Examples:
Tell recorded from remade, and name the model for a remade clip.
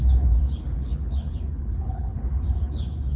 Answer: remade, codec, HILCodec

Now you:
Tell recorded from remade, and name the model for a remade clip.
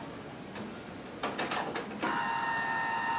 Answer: recorded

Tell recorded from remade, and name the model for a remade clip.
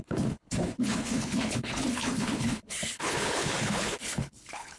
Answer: remade, codec, HILCodec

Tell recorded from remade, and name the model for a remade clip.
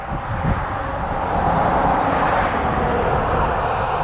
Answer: recorded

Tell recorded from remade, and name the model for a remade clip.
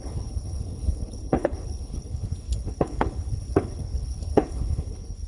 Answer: remade, codec, HILCodec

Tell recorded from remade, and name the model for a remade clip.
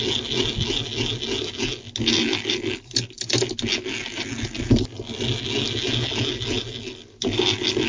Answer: recorded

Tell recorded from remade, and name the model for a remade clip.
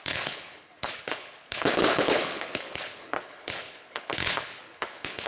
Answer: remade, codec, HILCodec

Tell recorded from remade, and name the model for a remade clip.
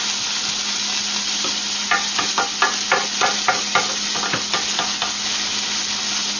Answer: recorded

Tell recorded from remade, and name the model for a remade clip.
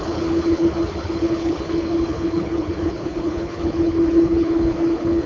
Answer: remade, codec, HILCodec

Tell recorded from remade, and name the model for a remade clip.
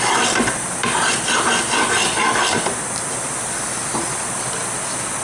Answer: recorded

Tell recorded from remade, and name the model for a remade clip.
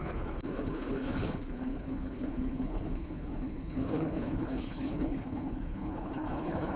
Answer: remade, codec, HILCodec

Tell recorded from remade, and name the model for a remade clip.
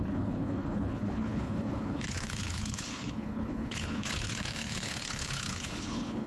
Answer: remade, codec, HILCodec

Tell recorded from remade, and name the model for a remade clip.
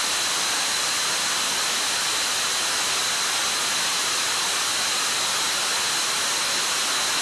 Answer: recorded